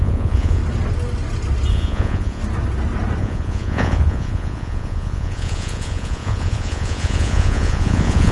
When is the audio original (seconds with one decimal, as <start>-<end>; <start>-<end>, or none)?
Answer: 0.6-1.7; 2.4-3.2